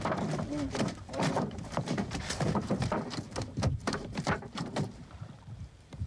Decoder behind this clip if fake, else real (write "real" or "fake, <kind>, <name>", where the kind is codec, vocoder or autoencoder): fake, vocoder, BigVGAN v2